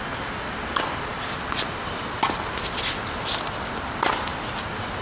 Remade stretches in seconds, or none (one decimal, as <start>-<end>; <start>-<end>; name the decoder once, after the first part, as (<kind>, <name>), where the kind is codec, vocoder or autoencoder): none